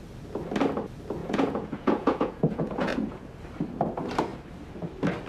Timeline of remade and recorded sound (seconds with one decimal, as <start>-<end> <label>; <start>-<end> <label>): 0.0-1.2 recorded; 1.2-3.2 remade; 3.2-5.3 recorded